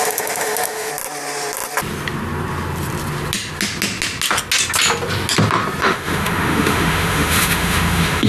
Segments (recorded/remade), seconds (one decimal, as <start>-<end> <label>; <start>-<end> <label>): 0.0-0.9 remade; 0.9-5.8 recorded; 5.8-8.3 remade